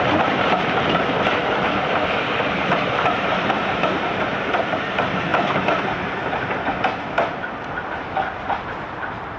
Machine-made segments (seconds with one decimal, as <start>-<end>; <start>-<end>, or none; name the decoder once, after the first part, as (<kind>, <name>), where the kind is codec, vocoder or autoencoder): 0.0-5.3 (vocoder, BigVGAN v2); 8.5-9.4